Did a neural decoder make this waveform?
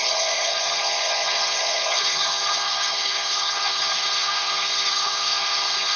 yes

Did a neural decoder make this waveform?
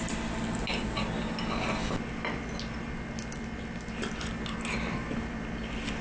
no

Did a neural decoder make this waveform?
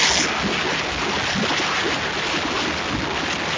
no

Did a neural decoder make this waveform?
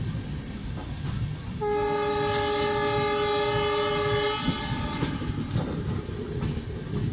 no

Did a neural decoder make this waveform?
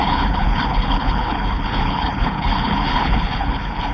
yes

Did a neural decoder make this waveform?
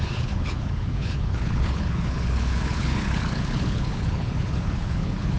yes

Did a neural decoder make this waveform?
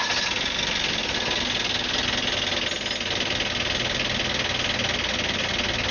no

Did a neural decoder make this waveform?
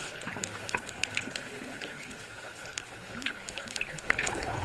yes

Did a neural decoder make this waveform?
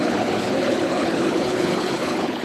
yes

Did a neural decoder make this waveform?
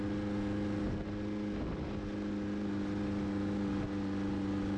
no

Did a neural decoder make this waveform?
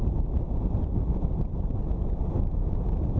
no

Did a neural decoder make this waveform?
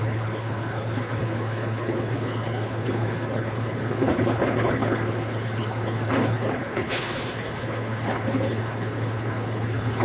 yes